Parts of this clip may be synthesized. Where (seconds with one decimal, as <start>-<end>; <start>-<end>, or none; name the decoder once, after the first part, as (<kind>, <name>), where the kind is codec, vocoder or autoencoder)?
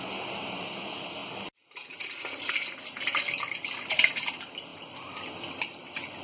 none